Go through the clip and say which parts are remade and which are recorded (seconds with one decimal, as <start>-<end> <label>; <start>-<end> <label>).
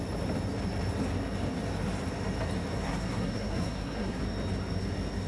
0.0-2.7 recorded; 2.7-4.2 remade; 4.2-5.3 recorded